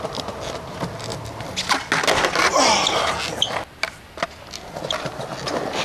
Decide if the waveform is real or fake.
real